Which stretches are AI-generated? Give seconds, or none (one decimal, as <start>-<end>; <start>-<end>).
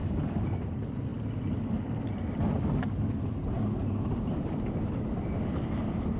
0.0-0.7; 3.1-4.5